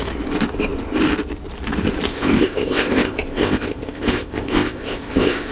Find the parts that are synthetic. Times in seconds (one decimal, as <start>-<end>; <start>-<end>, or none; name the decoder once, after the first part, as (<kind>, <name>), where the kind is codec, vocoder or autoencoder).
2.1-5.5 (codec, ZipCodec)